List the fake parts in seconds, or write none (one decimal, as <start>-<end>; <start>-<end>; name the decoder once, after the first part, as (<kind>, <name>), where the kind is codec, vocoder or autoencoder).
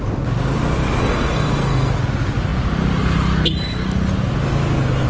1.0-1.9 (codec, SNAC)